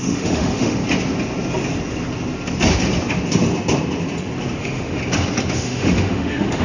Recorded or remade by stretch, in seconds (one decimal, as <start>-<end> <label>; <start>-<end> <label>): 0.0-0.8 remade; 0.8-4.6 recorded; 4.6-5.0 remade; 5.0-5.5 recorded; 5.5-6.6 remade